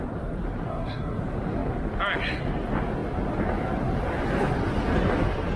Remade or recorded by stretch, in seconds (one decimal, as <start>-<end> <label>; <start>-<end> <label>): 0.0-0.7 recorded; 0.7-1.2 remade; 1.2-5.6 recorded